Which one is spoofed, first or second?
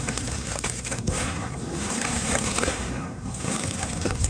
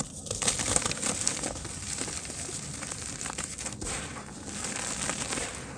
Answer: first